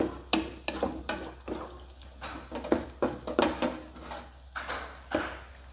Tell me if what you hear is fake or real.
real